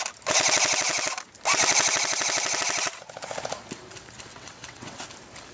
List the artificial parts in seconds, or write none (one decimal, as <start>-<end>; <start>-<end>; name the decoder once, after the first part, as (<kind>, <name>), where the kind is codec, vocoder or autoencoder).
4.3-5.1 (vocoder, WaveNeXt)

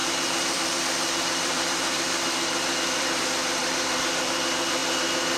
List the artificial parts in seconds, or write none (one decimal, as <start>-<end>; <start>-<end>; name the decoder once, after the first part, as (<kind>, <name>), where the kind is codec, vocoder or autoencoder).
0.0-3.2 (vocoder, BigVGAN v2); 3.6-4.2; 4.8-5.4

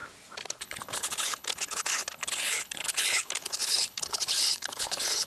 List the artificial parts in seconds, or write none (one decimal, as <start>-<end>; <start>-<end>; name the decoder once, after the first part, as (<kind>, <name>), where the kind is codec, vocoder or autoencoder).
0.6-5.3 (codec, HILCodec)

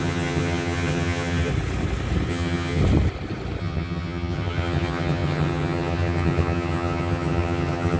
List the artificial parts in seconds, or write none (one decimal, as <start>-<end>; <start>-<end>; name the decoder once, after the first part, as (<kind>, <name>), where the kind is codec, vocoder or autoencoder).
0.0-1.5 (vocoder, HiFi-GAN); 2.3-2.8; 3.6-8.0

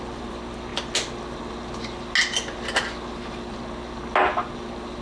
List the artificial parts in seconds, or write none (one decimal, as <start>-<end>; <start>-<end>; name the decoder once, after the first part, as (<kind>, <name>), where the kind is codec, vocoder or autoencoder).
none

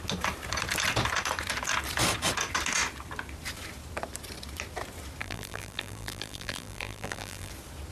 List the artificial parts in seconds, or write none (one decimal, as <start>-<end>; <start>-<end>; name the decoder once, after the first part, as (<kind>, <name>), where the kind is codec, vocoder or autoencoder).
5.2-7.5 (vocoder, BigVGAN v2)

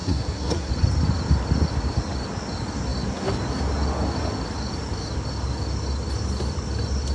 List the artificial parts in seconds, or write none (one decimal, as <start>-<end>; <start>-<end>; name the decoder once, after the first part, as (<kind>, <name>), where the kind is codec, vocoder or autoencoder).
0.0-0.7 (codec, SNAC)